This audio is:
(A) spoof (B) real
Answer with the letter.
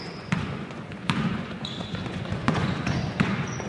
A